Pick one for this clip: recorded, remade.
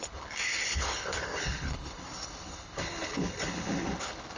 remade